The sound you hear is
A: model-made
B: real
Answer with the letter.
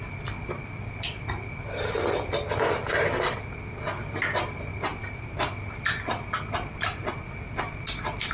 B